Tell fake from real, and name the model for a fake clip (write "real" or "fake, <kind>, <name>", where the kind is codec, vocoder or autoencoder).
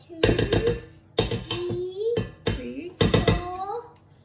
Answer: real